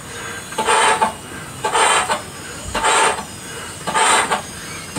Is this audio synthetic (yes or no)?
no